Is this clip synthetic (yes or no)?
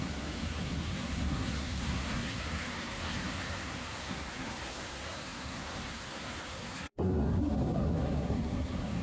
yes